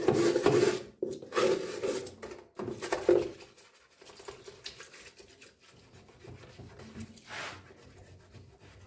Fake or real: real